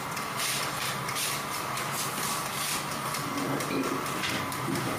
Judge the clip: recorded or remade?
remade